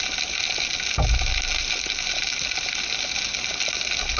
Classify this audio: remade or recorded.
recorded